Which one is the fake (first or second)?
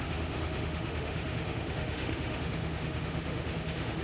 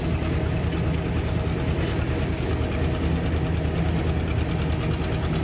first